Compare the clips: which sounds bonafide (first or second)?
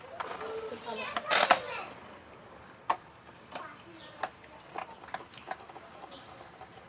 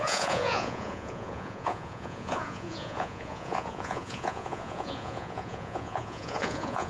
first